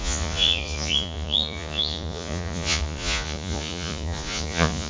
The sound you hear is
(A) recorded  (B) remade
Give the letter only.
B